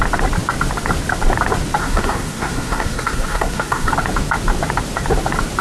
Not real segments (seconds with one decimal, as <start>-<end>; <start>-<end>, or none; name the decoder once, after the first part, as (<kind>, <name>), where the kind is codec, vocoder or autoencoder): 1.8-3.9 (codec, SNAC)